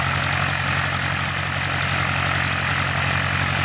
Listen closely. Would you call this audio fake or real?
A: real